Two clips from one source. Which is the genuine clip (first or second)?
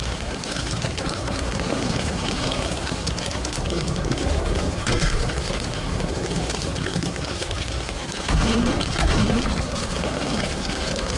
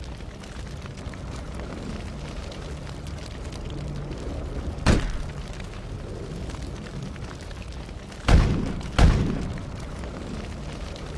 second